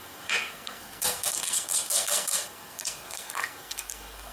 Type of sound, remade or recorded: remade